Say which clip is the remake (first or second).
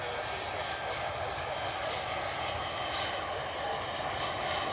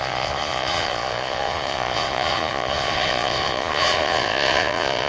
second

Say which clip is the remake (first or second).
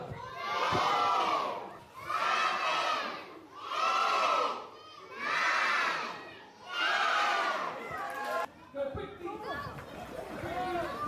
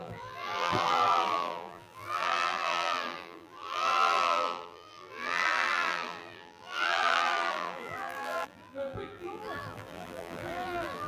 second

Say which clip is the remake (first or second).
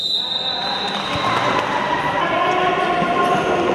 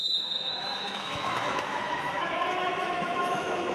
second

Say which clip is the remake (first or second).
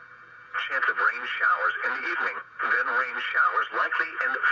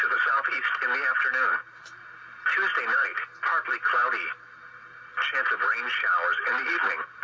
first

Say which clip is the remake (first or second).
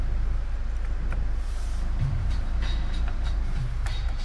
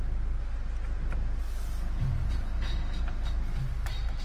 first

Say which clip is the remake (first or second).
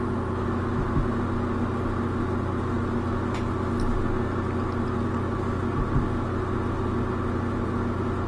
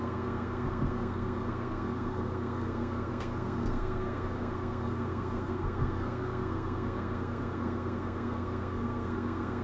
second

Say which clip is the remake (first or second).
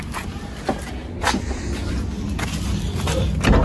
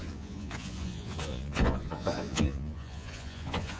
second